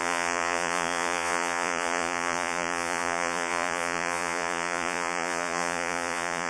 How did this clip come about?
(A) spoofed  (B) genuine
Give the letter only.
A